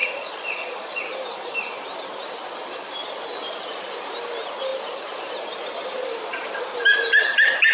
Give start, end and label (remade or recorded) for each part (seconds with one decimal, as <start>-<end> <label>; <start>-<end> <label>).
0.0-1.0 remade; 1.0-7.7 recorded